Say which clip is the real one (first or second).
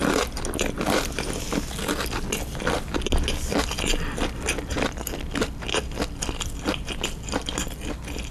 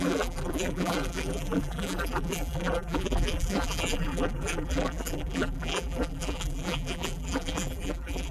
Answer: first